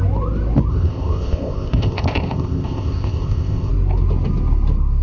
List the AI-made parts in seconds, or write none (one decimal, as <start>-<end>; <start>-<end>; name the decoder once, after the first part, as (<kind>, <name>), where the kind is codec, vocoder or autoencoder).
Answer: 0.7-3.7 (codec, ZipCodec)